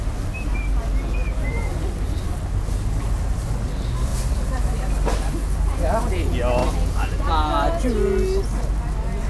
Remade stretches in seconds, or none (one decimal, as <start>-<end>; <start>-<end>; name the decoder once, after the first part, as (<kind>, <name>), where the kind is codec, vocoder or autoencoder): none